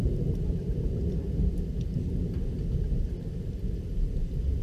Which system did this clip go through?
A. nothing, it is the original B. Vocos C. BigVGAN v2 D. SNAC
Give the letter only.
A